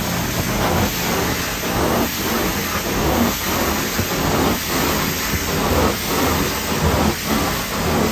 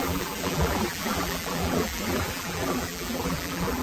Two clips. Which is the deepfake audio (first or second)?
second